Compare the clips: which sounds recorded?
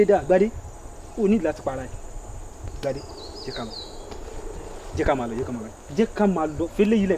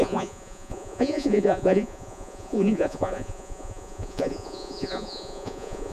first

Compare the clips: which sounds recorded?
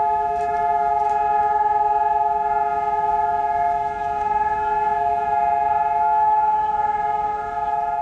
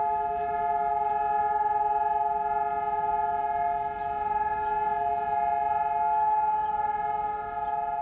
second